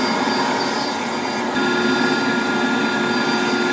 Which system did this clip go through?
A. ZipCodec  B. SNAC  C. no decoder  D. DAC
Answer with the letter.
C